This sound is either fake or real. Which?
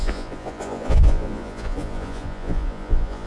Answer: fake